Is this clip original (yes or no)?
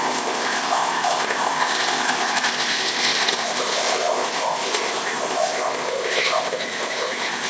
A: no